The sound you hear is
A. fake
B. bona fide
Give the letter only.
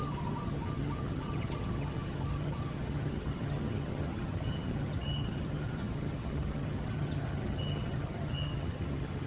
A